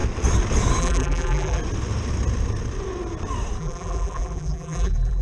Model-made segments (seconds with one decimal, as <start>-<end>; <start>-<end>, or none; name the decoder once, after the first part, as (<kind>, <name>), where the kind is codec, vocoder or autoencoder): 0.8-1.6 (vocoder, BigVGAN v2); 3.6-5.2